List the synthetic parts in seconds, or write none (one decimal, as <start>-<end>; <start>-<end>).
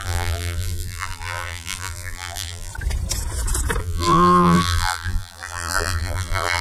0.0-2.7; 3.8-6.6